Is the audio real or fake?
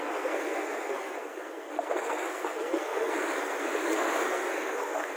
fake